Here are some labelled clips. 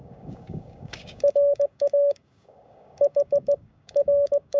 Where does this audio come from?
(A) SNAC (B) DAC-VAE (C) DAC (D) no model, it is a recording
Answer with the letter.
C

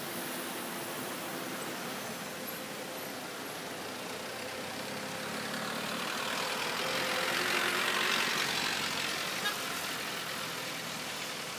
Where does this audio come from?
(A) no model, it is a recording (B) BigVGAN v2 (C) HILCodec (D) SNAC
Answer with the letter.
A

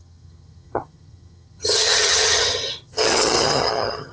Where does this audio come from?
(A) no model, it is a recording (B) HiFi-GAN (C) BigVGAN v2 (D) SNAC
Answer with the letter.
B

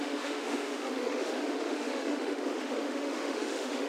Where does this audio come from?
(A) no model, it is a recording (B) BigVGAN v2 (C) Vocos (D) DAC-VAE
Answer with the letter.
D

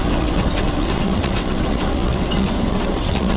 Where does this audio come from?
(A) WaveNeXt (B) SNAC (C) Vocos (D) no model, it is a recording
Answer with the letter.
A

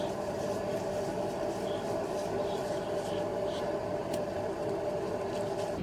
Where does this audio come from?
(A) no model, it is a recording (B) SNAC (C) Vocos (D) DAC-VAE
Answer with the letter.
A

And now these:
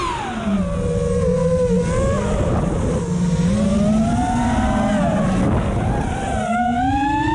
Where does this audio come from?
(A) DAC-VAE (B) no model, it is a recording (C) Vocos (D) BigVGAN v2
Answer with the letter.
B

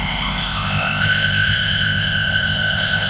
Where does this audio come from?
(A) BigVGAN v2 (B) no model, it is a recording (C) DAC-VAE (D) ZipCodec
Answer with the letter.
D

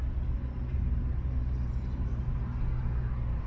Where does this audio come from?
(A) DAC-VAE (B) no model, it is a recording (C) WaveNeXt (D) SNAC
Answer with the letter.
B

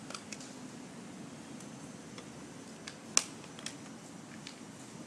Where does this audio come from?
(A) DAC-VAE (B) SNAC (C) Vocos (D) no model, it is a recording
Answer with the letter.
D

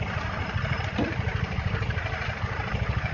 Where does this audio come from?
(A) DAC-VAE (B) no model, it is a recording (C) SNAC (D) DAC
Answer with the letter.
B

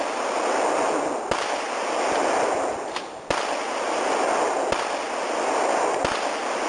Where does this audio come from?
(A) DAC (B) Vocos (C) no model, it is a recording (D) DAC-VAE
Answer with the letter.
C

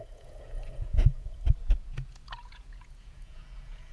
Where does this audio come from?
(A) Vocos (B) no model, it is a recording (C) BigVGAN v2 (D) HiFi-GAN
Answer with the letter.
A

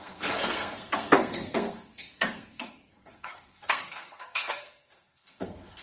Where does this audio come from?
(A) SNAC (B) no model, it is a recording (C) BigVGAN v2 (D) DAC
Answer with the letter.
A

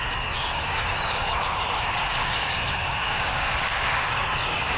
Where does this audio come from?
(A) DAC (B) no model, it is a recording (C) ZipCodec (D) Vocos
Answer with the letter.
A